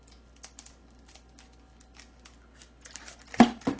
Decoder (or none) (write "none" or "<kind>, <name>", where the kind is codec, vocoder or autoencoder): none